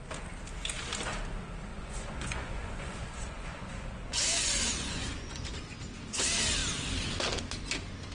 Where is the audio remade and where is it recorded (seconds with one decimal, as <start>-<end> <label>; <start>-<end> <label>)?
0.0-1.7 recorded; 1.7-5.4 remade; 5.4-8.1 recorded